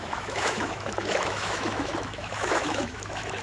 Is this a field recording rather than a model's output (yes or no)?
no